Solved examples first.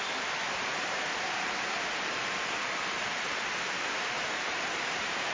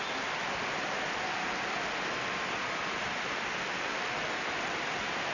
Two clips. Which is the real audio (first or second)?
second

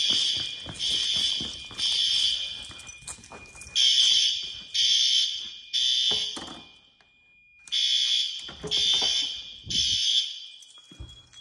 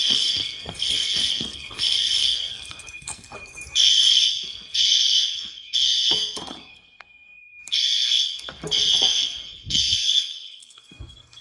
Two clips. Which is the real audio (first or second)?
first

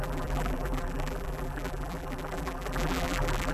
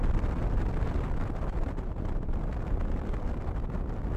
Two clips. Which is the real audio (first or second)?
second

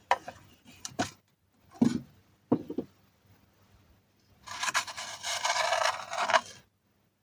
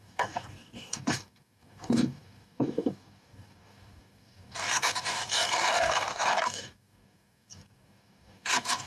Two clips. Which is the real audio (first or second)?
first